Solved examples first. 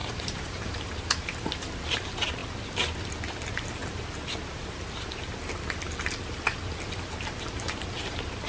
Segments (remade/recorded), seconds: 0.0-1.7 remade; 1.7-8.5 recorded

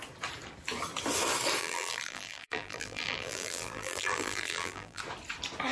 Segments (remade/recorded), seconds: 0.0-1.6 recorded; 1.6-5.0 remade; 5.0-5.7 recorded

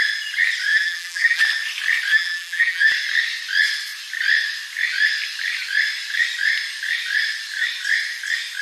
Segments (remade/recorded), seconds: 0.0-0.7 recorded; 0.7-1.4 remade; 1.4-2.1 recorded; 2.1-2.9 remade; 2.9-8.6 recorded

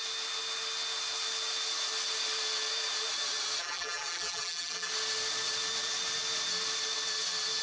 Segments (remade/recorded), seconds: 0.0-3.6 recorded; 3.6-4.9 remade; 4.9-7.6 recorded